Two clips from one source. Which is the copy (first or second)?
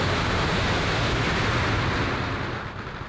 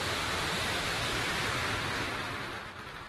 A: second